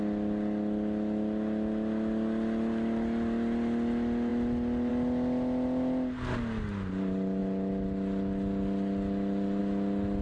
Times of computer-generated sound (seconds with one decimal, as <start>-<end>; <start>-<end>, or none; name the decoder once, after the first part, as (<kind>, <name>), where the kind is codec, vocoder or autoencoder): none